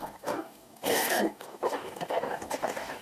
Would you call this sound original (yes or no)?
no